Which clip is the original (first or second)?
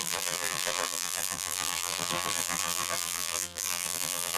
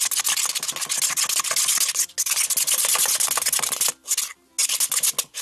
second